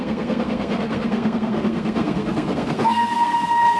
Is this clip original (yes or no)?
no